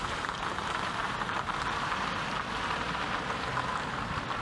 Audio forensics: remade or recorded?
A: remade